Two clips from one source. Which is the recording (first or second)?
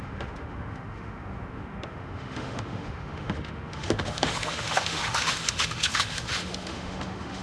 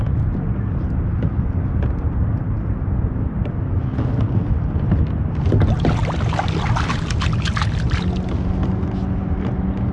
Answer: second